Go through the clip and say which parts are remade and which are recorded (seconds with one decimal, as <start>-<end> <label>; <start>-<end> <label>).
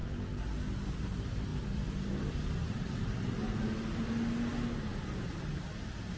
0.0-1.5 recorded; 1.5-3.2 remade; 3.2-6.2 recorded